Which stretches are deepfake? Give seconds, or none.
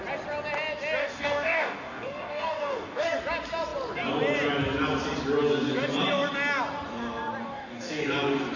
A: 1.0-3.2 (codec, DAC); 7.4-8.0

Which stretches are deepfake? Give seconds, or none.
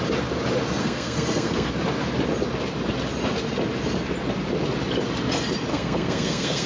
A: 0.8-1.7 (codec, SNAC); 5.7-6.7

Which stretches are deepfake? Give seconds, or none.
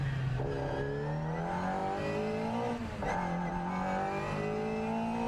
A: none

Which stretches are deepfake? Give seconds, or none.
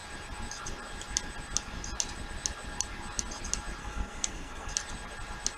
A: 3.8-4.7 (codec, SNAC)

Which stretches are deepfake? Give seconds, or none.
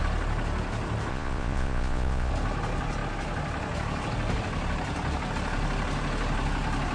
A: 1.1-2.3 (vocoder, Vocos)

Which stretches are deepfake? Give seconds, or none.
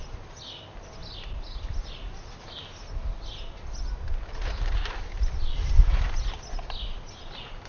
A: none